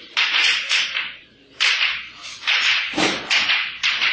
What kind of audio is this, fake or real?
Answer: fake